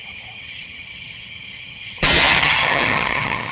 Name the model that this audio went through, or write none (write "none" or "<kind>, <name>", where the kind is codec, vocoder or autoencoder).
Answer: vocoder, HiFi-GAN